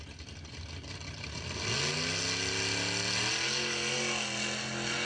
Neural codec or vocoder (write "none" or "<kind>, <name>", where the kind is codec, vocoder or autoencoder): none